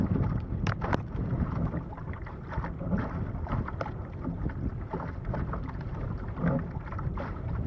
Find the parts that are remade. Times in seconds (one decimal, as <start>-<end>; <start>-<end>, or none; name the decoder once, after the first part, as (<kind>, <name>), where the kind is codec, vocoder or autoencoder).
none